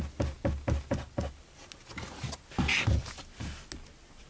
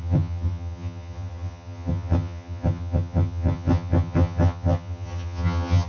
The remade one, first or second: second